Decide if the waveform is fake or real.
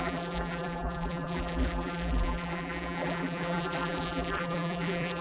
fake